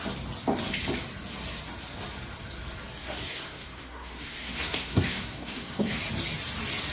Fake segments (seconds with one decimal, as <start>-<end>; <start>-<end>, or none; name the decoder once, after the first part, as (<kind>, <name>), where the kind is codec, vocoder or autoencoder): 3.0-6.0 (codec, SNAC)